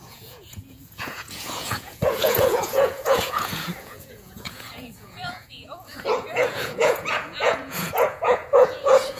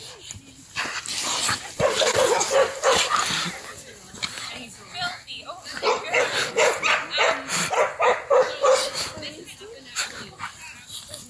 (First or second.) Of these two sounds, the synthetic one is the first